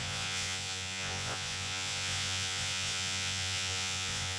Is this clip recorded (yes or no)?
no